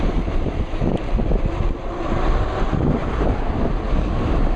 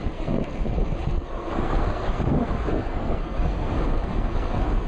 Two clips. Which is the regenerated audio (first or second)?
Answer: second